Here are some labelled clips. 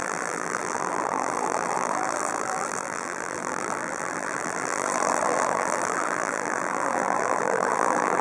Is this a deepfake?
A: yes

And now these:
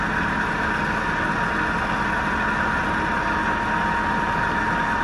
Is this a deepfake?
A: no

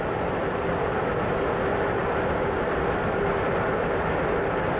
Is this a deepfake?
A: no